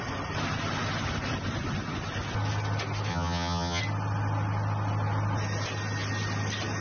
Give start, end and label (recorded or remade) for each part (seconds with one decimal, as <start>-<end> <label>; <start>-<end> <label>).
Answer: 0.0-3.1 recorded; 3.1-3.8 remade; 3.8-6.8 recorded

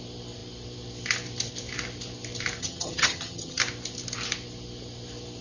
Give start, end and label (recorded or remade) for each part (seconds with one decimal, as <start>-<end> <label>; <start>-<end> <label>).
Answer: 0.0-2.6 recorded; 2.6-3.6 remade; 3.6-5.4 recorded

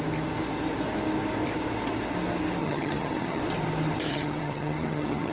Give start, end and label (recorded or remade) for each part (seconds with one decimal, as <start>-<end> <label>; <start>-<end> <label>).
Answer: 0.0-2.6 recorded; 2.6-3.4 remade; 3.4-4.1 recorded; 4.1-5.3 remade